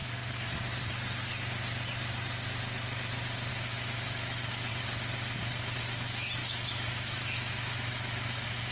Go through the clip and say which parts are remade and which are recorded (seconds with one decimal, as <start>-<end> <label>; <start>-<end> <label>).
0.0-0.5 remade; 0.5-3.5 recorded; 3.5-4.7 remade; 4.7-6.4 recorded; 6.4-8.7 remade